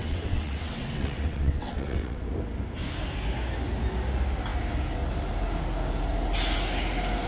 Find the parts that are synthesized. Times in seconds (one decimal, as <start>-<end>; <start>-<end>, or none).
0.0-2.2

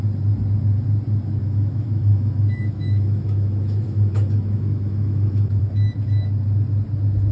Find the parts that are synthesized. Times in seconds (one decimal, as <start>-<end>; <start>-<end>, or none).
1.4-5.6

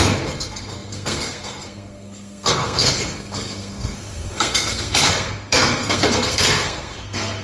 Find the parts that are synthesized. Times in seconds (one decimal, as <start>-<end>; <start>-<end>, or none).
0.0-7.4

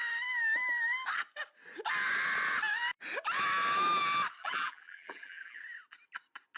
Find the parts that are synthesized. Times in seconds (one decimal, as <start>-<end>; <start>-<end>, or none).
4.4-5.6

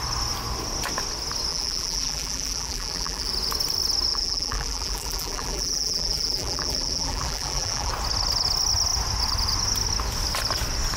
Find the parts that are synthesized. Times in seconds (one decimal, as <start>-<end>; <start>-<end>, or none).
1.5-3.3; 4.1-7.9

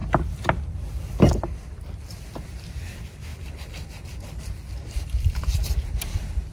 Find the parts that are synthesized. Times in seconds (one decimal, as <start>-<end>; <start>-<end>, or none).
0.7-6.5

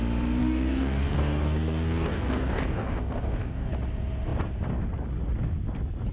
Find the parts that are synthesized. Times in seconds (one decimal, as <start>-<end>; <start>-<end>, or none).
0.4-3.7